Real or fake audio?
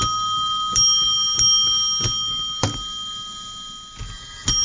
real